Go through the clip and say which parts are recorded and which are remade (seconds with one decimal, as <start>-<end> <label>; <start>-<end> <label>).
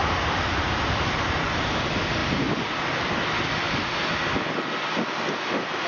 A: 0.0-2.2 remade; 2.2-5.9 recorded